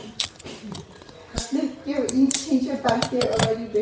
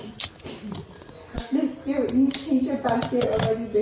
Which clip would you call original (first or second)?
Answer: second